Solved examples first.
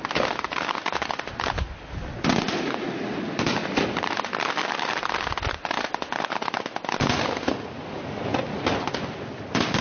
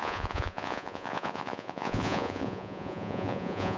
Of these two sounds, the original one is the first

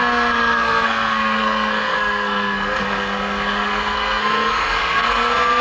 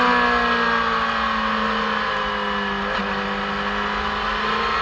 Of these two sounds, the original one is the second